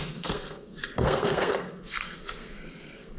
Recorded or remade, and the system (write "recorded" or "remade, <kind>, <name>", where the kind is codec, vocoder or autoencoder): remade, codec, SNAC